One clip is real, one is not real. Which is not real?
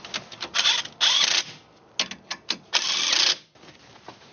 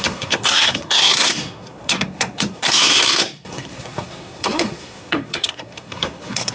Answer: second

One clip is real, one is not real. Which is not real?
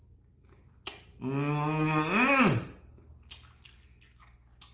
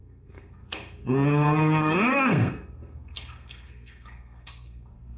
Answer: second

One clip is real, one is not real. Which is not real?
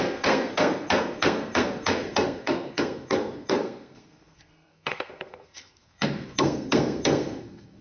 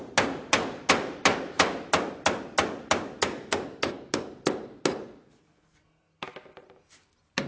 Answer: first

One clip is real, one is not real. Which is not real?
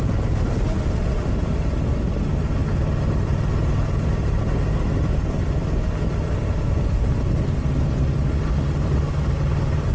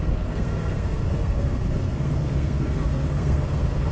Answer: second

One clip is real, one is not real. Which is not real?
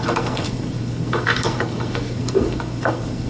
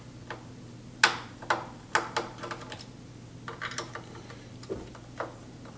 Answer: first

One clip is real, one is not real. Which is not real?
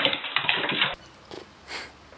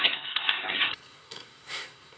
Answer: second